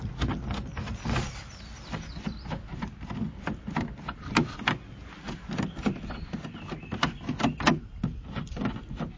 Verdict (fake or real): real